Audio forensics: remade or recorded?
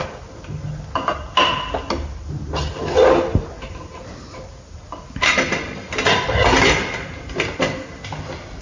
recorded